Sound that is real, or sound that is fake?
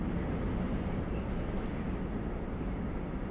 real